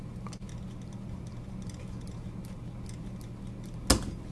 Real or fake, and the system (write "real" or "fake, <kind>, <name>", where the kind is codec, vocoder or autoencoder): real